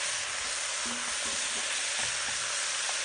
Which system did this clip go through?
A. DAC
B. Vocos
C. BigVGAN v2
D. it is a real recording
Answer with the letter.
D